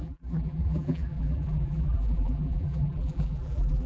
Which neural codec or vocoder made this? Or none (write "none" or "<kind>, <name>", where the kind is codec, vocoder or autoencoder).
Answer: vocoder, BigVGAN v2